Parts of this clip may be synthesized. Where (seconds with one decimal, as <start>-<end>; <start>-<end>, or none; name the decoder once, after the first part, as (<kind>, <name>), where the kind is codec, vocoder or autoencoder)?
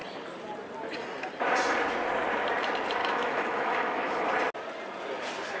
3.0-4.3 (autoencoder, DAC-VAE)